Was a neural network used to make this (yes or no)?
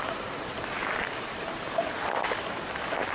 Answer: no